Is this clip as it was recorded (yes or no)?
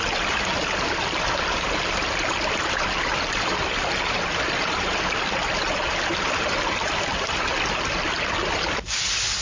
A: yes